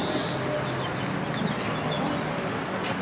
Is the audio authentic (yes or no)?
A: yes